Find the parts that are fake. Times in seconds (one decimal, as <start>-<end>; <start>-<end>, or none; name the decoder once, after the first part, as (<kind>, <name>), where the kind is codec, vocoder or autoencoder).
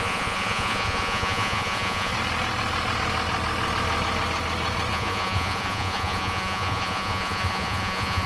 0.0-2.1 (vocoder, Vocos); 4.9-8.3